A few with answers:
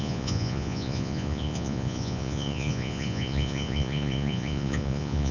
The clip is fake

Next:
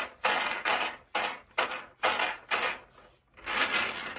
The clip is real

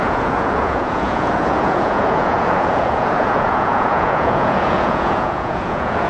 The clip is fake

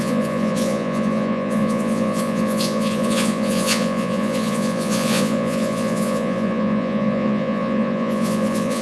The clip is fake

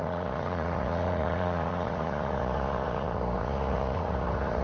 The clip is fake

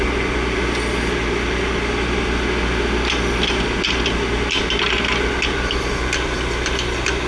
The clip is real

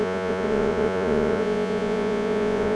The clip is fake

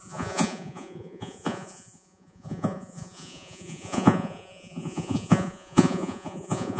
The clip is fake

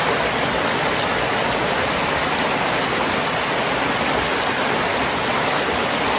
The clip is real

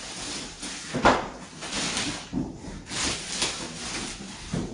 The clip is real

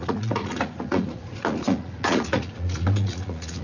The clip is fake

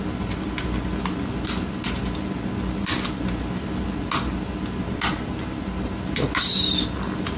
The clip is real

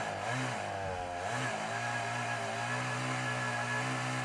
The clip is real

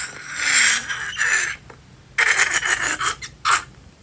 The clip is real